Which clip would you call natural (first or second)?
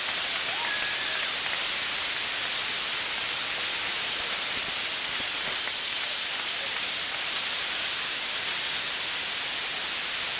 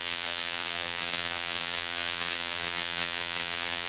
first